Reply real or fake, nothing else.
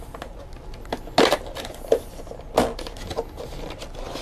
real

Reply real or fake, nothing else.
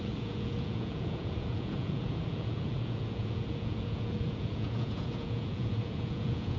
fake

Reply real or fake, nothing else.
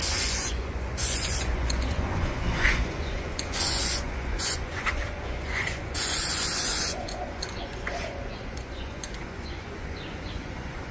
fake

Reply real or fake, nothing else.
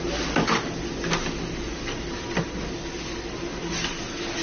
real